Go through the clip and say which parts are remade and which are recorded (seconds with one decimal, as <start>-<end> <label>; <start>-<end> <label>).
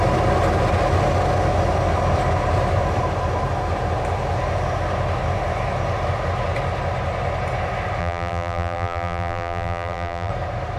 0.0-8.0 recorded; 8.0-10.3 remade; 10.3-10.8 recorded